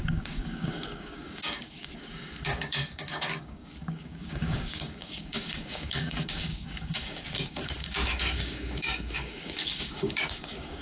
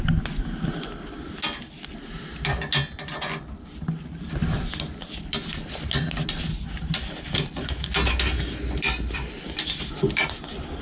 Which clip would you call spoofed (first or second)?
first